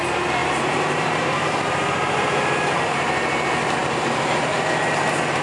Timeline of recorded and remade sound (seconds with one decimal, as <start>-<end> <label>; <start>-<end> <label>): 0.0-0.4 recorded; 0.4-3.0 remade; 3.0-5.4 recorded